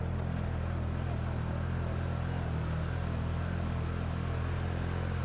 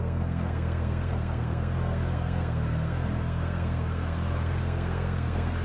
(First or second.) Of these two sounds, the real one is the first